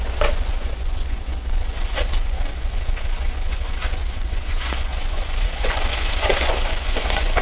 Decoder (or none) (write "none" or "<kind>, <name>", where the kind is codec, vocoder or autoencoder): vocoder, Vocos